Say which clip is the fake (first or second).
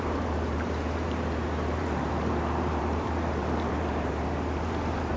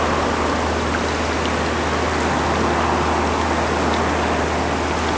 first